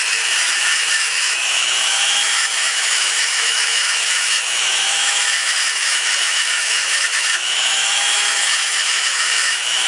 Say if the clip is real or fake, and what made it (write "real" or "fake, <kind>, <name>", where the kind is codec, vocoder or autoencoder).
fake, autoencoder, DAC-VAE